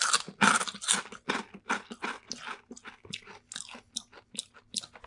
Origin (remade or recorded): recorded